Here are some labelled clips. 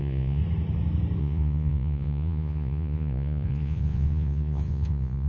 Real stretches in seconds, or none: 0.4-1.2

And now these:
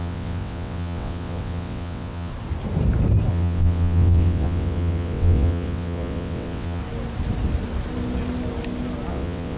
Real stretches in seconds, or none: 2.3-3.3; 6.8-9.1

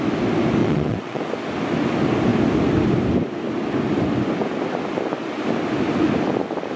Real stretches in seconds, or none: 0.0-0.6; 1.2-6.8

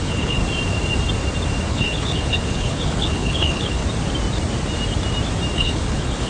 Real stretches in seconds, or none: 0.4-1.7; 3.8-5.5